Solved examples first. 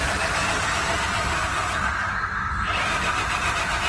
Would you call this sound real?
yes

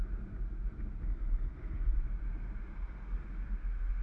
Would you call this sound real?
yes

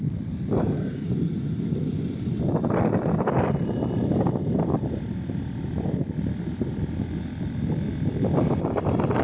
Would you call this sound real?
no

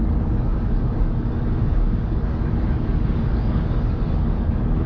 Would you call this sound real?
no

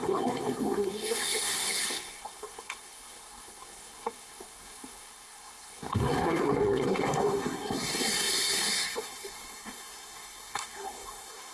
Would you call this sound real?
no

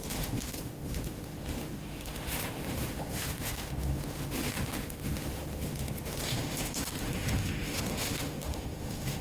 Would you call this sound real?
no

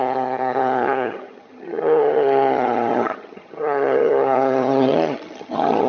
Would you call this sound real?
no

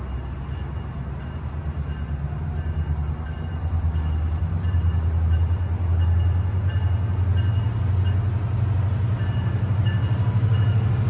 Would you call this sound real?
yes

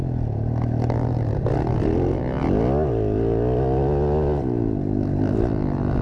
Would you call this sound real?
yes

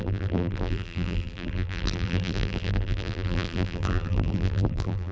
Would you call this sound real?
no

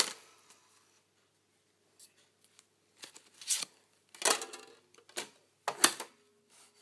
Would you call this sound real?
yes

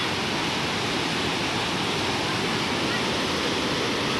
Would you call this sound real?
yes